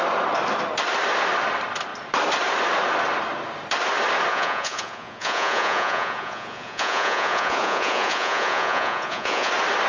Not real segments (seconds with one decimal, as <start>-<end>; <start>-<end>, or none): 4.3-9.5